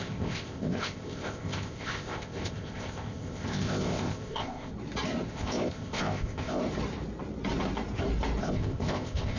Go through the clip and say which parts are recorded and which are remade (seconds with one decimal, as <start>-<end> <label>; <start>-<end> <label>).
0.0-4.7 remade; 4.7-5.3 recorded; 5.3-6.6 remade; 6.6-8.4 recorded; 8.4-9.4 remade